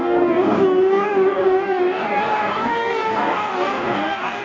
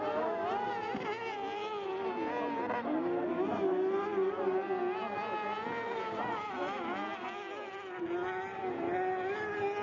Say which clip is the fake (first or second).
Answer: first